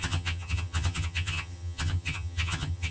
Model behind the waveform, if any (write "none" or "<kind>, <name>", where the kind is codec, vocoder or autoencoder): vocoder, HiFi-GAN